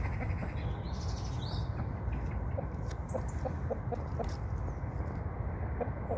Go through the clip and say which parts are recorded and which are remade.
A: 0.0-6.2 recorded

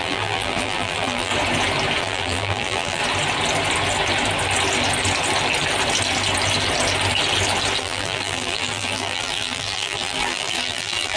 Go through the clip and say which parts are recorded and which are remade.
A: 0.0-1.3 remade; 1.3-2.0 recorded; 2.0-3.0 remade; 3.0-7.8 recorded; 7.8-11.2 remade

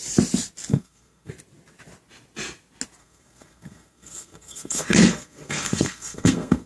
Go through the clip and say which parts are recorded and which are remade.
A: 0.0-0.7 recorded; 0.7-1.3 remade; 1.3-3.0 recorded; 3.0-6.7 remade

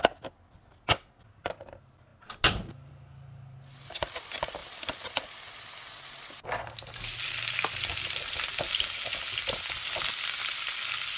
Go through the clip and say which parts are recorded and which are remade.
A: 0.0-11.2 recorded

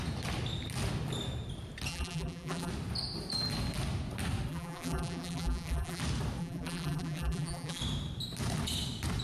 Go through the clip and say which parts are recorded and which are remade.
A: 0.0-1.9 recorded; 1.9-2.7 remade; 2.7-4.5 recorded; 4.5-6.0 remade; 6.0-6.4 recorded; 6.4-7.8 remade; 7.8-9.2 recorded

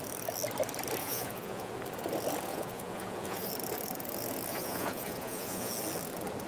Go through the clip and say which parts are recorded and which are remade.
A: 0.0-1.0 recorded; 1.0-1.7 remade; 1.7-2.5 recorded; 2.5-3.5 remade; 3.5-4.5 recorded; 4.5-5.7 remade; 5.7-6.5 recorded

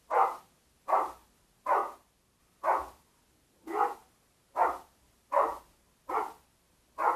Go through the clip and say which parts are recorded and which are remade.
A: 0.0-4.0 recorded; 4.0-5.0 remade; 5.0-7.2 recorded

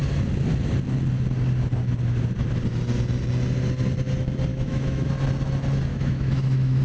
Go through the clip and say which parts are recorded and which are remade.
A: 0.0-4.5 recorded; 4.5-5.1 remade; 5.1-5.9 recorded; 5.9-6.8 remade